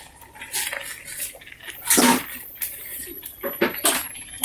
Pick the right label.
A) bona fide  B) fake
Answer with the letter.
A